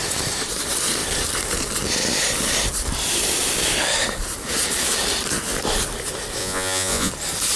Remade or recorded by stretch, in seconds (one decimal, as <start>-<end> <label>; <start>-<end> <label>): 0.0-6.4 recorded; 6.4-7.1 remade; 7.1-7.6 recorded